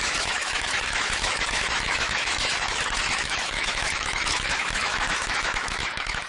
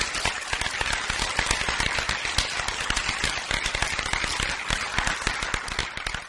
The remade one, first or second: first